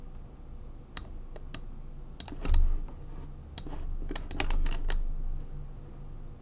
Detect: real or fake real